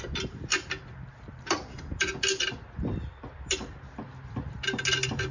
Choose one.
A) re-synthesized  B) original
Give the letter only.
B